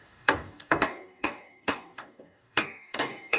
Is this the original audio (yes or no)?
no